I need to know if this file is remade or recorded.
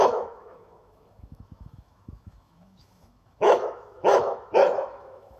remade